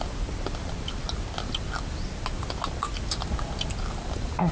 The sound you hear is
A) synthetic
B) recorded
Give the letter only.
B